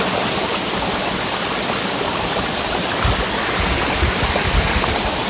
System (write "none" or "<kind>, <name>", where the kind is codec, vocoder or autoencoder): none